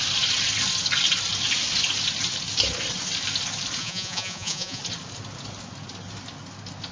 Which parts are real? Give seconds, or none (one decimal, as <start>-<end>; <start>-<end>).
0.0-3.8; 4.8-6.9